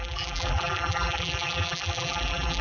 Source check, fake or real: fake